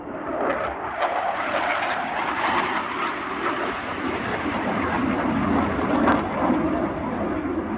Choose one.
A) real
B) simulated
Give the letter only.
A